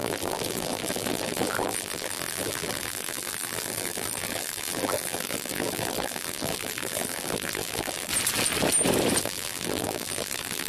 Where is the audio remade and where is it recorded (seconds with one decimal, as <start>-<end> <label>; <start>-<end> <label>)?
0.0-8.1 remade; 8.1-9.2 recorded; 9.2-10.7 remade